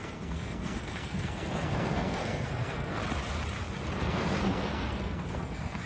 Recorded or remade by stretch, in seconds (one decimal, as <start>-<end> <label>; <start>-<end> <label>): 0.0-3.0 remade; 3.0-4.0 recorded; 4.0-5.9 remade